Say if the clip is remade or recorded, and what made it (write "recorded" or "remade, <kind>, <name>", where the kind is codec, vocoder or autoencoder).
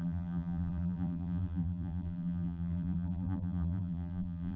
remade, vocoder, BigVGAN v2